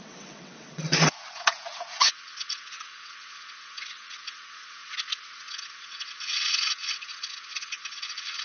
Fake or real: fake